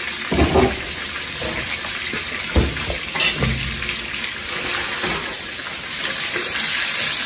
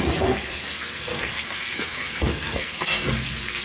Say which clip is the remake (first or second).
second